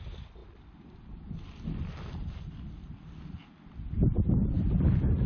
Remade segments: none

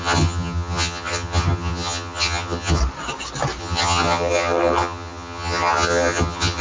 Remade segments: 0.0-2.8 (vocoder, HiFi-GAN); 3.6-6.6

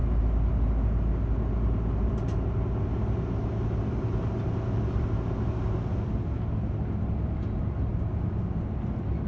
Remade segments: none

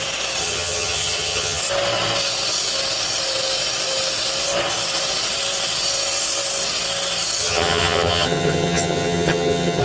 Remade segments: 0.4-1.6 (vocoder, HiFi-GAN); 7.4-9.8

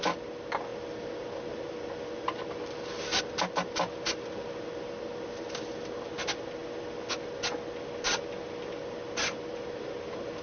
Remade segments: none

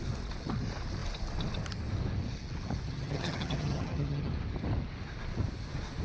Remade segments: 2.9-4.3 (vocoder, HiFi-GAN)

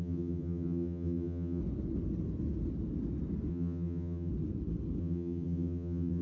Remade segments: 0.0-1.6 (vocoder, HiFi-GAN); 3.5-4.3; 5.0-6.2